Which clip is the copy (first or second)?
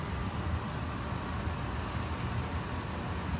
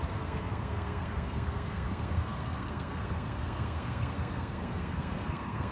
second